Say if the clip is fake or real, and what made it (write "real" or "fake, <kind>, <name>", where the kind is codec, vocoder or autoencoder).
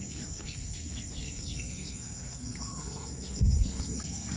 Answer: fake, codec, SNAC